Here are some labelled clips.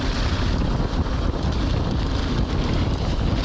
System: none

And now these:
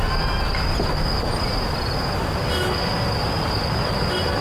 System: none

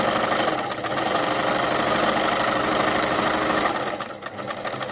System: none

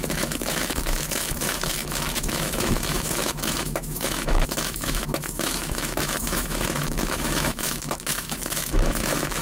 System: autoencoder, DAC-VAE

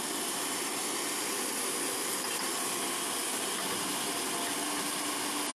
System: none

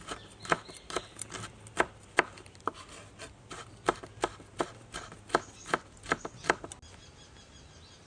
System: none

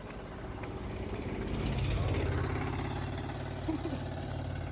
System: none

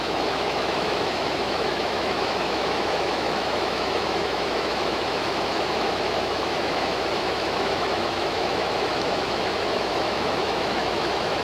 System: autoencoder, DAC-VAE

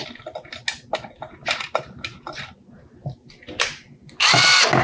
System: none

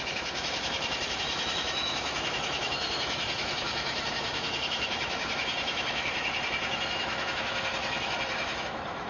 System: autoencoder, DAC-VAE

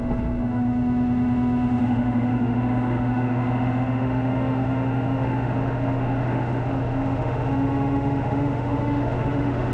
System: autoencoder, DAC-VAE